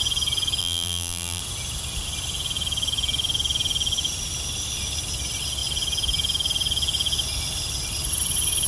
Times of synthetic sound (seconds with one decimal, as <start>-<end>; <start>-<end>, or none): 0.6-1.4